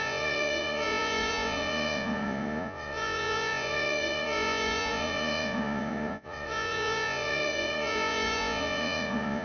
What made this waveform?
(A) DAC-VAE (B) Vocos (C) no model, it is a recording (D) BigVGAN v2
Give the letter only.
B